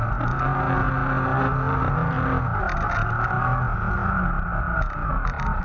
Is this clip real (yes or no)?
yes